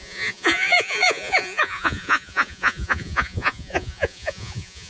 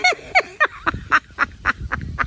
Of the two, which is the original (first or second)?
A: second